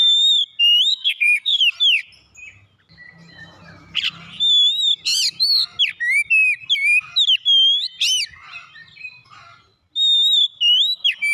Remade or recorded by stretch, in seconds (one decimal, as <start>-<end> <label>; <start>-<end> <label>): 0.0-0.9 recorded; 0.9-1.6 remade; 1.6-11.3 recorded